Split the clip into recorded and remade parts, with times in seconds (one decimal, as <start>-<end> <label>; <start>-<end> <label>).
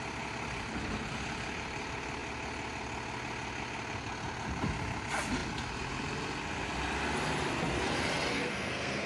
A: 0.0-8.3 recorded; 8.3-9.1 remade